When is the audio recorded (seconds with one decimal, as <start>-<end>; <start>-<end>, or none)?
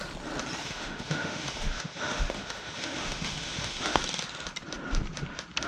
0.0-0.6; 4.0-5.7